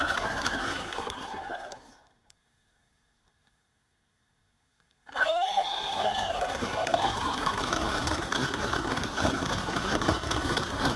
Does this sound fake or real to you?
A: fake